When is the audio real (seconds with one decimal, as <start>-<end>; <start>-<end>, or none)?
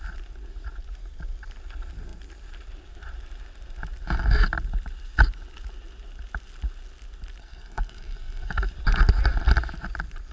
0.0-7.4; 8.7-10.3